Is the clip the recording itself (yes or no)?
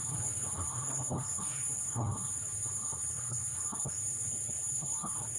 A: no